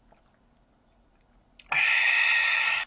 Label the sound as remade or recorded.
recorded